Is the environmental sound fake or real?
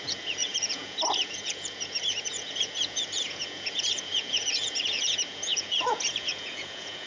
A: fake